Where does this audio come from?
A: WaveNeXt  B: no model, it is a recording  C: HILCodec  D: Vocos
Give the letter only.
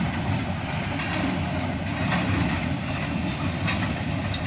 B